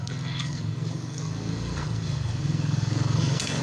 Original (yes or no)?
no